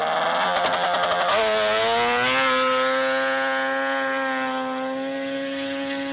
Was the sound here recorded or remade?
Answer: recorded